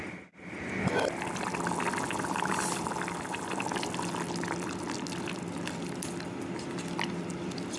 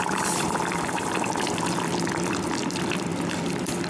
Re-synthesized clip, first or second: second